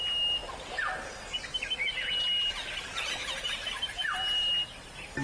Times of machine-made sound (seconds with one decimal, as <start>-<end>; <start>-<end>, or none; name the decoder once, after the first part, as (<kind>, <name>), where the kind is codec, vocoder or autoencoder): none